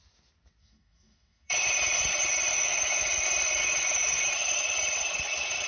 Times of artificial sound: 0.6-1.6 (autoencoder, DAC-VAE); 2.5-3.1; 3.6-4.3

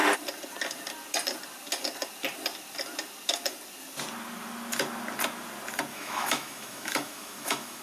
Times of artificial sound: 5.9-7.8 (autoencoder, DAC-VAE)

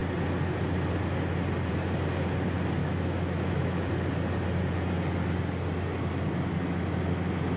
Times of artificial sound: 2.8-3.9 (autoencoder, DAC-VAE)

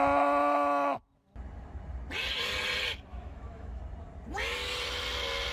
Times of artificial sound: 3.1-3.8 (autoencoder, DAC-VAE)

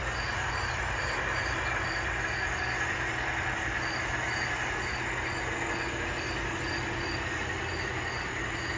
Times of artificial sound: none